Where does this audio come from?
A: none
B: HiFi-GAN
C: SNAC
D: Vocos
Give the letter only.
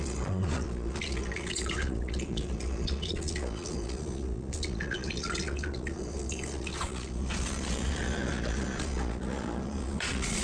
D